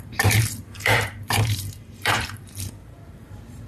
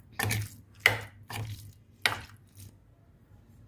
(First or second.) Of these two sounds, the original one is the second